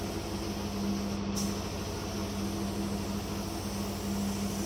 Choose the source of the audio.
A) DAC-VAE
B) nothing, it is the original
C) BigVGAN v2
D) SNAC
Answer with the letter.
B